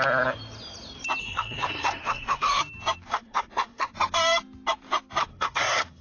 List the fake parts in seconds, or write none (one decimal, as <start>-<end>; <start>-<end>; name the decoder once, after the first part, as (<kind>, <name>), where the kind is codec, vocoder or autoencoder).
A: 1.2-2.6 (codec, SNAC); 3.1-4.0; 5.2-6.0